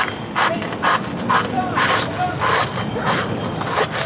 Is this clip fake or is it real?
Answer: real